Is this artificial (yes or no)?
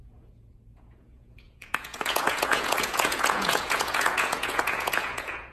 yes